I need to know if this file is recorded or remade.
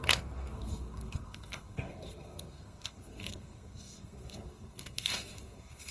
remade